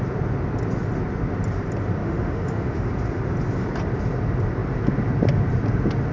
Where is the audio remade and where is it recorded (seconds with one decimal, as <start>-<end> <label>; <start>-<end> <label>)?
0.0-2.0 recorded; 2.0-2.9 remade; 2.9-6.1 recorded